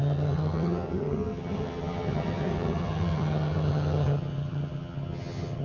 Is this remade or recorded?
remade